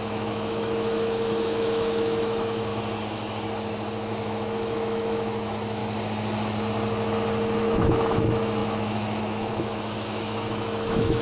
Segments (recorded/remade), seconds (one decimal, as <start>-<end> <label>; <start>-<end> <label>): 0.0-2.7 remade; 2.7-4.1 recorded; 4.1-5.8 remade; 5.8-7.6 recorded; 7.6-11.2 remade